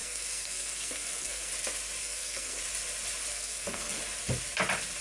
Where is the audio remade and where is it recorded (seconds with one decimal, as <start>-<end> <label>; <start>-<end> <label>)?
0.0-1.5 remade; 1.5-2.0 recorded; 2.0-2.6 remade; 2.6-3.3 recorded; 3.3-4.0 remade; 4.0-5.0 recorded